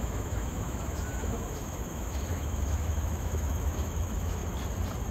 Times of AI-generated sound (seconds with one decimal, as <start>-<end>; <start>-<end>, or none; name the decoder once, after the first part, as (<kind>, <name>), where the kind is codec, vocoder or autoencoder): 0.0-4.4 (autoencoder, DAC-VAE)